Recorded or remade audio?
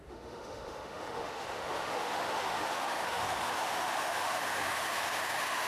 remade